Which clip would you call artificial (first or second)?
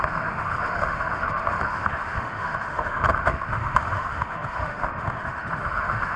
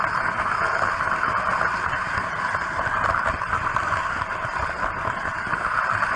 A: first